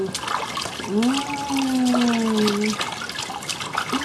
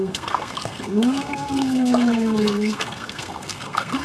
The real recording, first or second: first